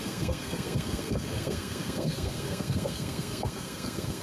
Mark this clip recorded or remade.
remade